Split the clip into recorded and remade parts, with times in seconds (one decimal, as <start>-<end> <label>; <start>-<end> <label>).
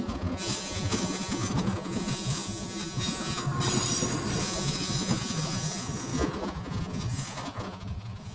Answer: 0.0-3.5 remade; 3.5-4.4 recorded; 4.4-8.3 remade